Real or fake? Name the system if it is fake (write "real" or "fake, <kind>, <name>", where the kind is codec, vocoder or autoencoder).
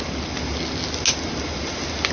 real